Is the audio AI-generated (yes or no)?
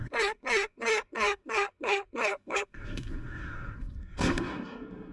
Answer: yes